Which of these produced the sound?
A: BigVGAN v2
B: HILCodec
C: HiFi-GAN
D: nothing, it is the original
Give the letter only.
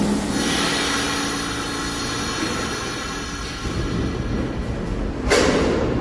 D